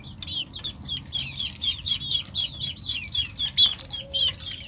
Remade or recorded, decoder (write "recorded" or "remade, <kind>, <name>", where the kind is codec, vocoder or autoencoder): recorded